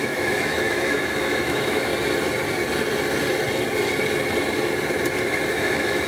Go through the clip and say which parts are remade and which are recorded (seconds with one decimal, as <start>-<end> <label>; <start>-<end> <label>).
0.0-1.9 remade; 1.9-5.5 recorded; 5.5-6.1 remade